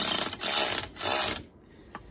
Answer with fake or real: real